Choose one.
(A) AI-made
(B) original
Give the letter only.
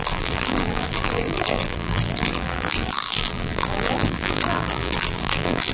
A